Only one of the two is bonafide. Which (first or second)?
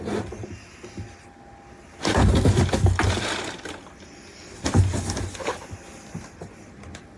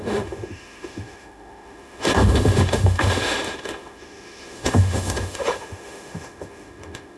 first